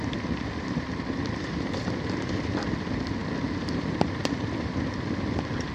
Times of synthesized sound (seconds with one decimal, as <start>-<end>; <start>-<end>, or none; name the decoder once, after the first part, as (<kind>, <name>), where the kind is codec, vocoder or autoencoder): none